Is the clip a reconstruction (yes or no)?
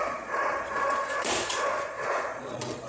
yes